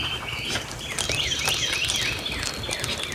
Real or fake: real